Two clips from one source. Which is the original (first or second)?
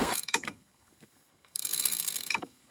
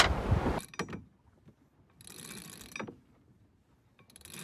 second